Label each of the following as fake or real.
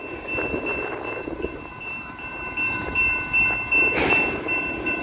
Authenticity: fake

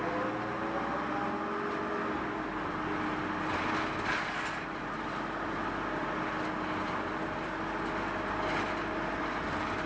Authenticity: real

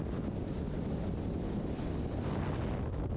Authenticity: real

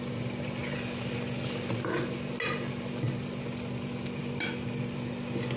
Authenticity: real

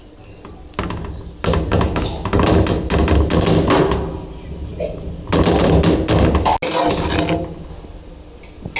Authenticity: real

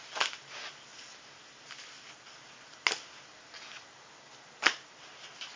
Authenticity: real